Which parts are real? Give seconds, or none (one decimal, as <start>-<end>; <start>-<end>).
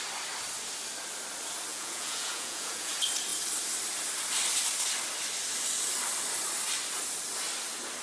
0.0-1.7; 2.9-8.0